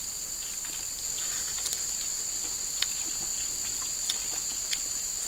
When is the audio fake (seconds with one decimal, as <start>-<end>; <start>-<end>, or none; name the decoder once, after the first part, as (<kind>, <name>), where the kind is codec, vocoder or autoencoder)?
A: none